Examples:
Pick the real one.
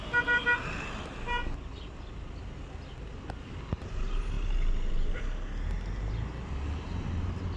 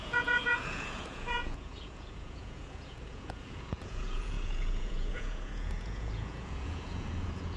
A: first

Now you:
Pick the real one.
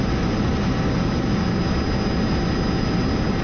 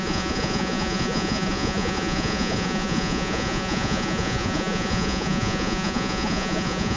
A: first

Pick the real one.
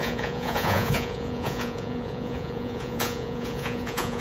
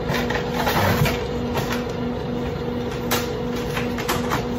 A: second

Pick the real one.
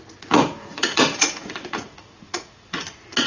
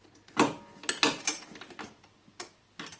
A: second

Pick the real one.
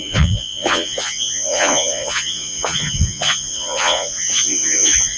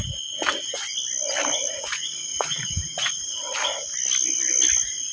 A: second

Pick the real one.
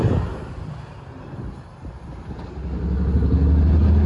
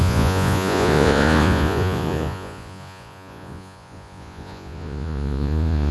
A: first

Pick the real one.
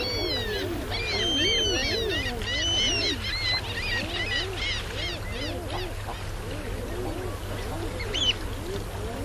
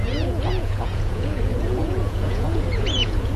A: first